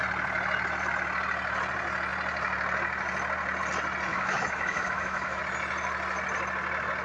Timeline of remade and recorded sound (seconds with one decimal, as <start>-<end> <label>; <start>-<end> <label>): 0.0-4.1 recorded; 4.1-5.4 remade; 5.4-7.0 recorded